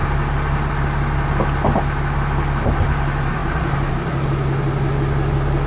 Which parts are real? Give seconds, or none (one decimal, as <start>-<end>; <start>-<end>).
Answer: 0.0-5.7